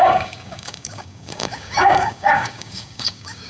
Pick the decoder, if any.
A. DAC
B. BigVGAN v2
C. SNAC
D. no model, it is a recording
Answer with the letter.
A